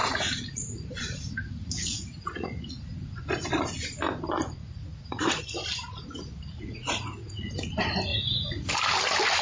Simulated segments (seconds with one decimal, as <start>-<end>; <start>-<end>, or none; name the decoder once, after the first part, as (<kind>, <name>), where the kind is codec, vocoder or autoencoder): 0.0-3.1 (vocoder, Vocos); 4.6-5.4; 6.5-7.5; 8.1-8.7